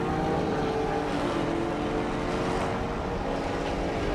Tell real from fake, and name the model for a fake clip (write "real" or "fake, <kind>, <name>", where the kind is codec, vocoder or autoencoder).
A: real